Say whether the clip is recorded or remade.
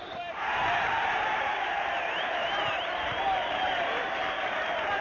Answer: remade